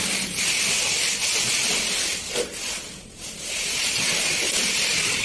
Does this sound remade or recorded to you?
recorded